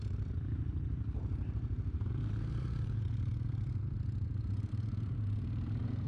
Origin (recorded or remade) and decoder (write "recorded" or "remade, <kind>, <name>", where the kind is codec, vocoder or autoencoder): remade, vocoder, BigVGAN v2